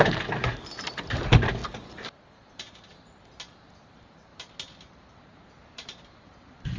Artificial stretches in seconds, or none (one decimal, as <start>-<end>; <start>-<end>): 0.0-1.6; 2.5-4.3; 5.1-6.8